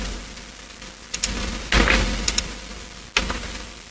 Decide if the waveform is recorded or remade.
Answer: recorded